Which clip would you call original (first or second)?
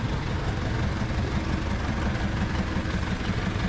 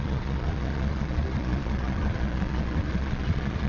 first